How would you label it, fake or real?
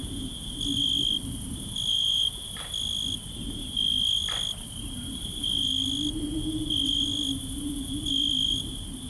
real